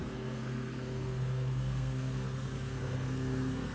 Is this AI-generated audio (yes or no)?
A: yes